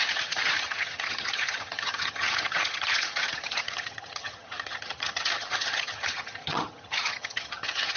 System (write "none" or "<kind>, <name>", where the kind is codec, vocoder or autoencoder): vocoder, HiFi-GAN